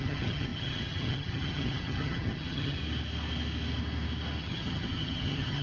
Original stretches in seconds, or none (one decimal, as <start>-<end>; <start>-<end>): 2.8-4.4